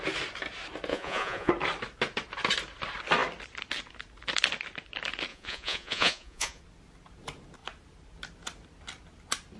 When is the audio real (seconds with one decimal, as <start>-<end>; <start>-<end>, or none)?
0.0-0.9; 1.5-5.3; 6.6-9.6